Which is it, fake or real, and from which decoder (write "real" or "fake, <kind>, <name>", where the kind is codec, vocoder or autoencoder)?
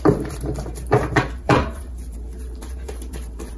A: fake, vocoder, BigVGAN v2